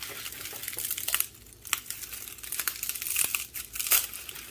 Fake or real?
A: real